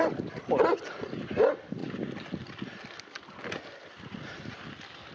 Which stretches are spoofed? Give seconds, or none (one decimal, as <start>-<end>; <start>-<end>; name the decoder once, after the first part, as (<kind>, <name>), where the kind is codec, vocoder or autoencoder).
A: none